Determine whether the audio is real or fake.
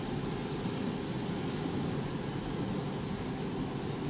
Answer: real